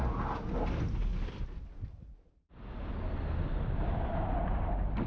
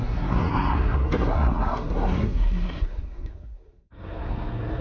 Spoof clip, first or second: second